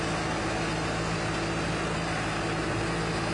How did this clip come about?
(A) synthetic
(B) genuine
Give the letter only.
B